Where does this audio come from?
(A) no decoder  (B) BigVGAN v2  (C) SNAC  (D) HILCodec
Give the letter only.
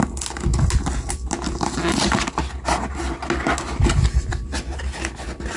A